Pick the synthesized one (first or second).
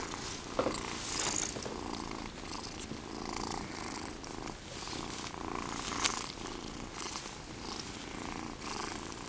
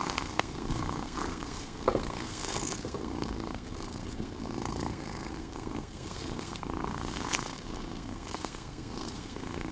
second